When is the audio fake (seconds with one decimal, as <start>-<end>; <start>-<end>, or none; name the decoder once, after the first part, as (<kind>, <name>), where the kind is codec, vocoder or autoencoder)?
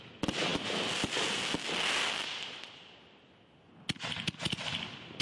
none